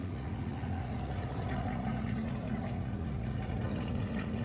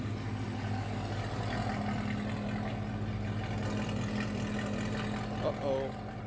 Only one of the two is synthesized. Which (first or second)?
first